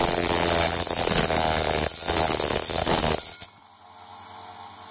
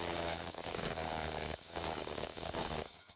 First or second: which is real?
first